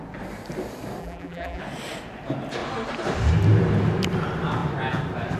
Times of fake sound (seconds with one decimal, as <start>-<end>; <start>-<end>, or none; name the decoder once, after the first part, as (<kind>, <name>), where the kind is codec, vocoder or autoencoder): 1.0-1.6 (vocoder, BigVGAN v2)